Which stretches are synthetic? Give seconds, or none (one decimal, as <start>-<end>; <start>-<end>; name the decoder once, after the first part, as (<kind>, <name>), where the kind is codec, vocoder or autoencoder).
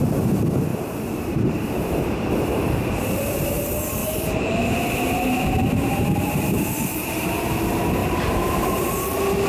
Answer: 0.7-3.6 (vocoder, BigVGAN v2); 4.0-7.4; 8.0-9.0